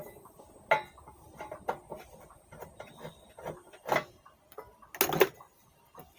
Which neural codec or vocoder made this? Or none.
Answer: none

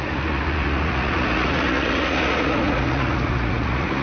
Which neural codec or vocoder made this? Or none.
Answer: vocoder, Vocos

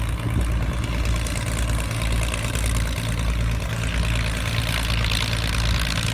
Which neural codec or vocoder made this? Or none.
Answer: none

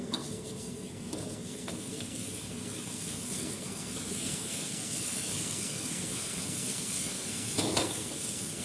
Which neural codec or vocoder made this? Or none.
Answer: codec, SNAC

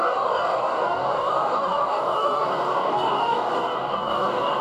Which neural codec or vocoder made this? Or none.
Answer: codec, DAC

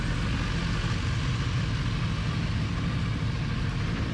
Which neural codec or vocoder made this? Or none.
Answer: none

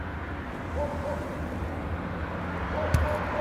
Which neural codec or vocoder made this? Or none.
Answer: none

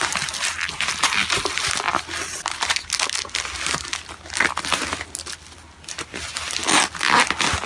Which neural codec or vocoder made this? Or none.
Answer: none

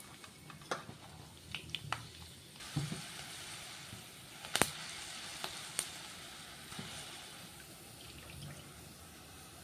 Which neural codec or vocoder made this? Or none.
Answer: none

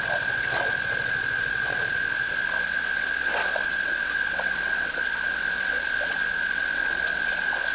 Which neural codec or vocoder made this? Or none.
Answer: vocoder, Vocos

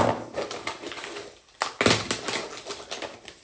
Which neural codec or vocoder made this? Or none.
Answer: none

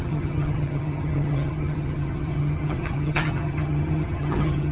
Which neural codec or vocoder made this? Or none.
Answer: vocoder, HiFi-GAN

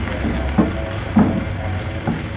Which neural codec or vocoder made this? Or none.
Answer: none